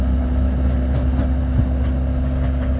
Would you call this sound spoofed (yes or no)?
no